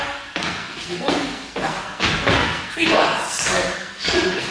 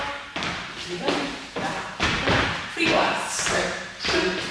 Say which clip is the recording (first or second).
second